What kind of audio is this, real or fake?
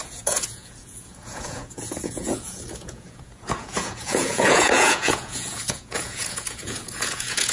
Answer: fake